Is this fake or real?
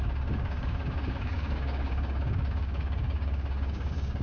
fake